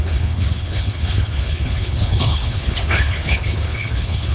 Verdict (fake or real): fake